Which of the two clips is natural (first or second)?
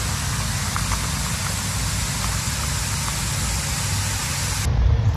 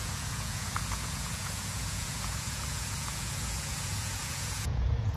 first